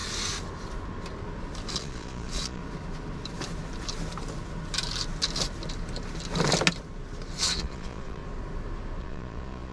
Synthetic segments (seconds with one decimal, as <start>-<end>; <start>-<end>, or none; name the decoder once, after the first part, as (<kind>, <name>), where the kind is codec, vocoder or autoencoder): 1.7-2.6 (vocoder, Vocos); 7.4-8.2; 9.0-9.7